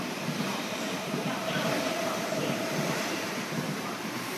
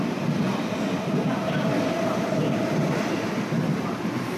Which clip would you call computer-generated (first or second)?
first